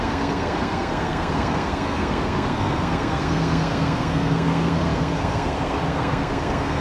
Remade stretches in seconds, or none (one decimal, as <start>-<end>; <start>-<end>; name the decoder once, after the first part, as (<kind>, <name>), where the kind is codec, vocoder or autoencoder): 0.0-6.8 (codec, SNAC)

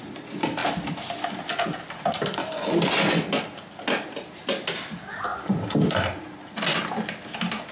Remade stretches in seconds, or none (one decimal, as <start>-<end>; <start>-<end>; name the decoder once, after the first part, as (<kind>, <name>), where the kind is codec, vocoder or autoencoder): none

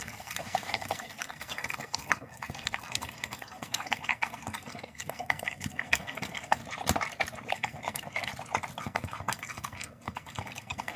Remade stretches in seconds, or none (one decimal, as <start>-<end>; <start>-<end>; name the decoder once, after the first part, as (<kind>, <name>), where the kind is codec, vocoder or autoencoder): 0.0-6.6 (codec, SNAC); 7.5-8.3; 8.8-11.0

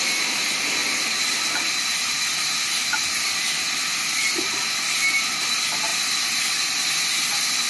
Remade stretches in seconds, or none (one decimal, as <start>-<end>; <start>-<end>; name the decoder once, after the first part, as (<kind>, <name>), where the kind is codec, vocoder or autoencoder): none

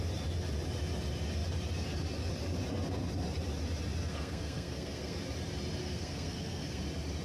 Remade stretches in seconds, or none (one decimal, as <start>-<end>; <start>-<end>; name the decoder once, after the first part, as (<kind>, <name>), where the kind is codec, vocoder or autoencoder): 4.1-5.2 (codec, SNAC); 5.8-6.8

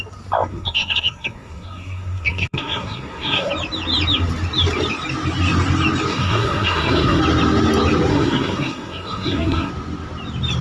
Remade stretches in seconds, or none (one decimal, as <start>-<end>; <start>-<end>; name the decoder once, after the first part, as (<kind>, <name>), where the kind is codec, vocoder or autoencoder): 0.5-3.5 (codec, SNAC); 6.1-7.2; 8.1-9.7